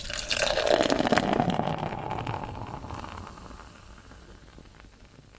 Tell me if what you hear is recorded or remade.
recorded